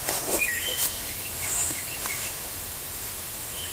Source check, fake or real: fake